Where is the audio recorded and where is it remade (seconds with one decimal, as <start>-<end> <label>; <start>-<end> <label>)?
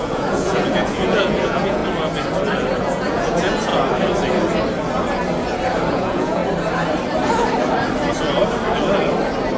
0.0-1.8 remade; 1.8-2.8 recorded; 2.8-3.7 remade; 3.7-5.9 recorded; 5.9-6.4 remade; 6.4-9.6 recorded